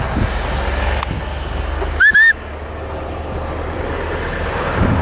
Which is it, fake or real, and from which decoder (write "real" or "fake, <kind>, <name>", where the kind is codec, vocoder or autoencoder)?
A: real